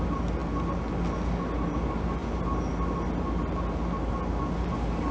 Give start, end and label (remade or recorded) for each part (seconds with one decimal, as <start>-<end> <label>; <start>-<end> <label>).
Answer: 0.0-5.1 recorded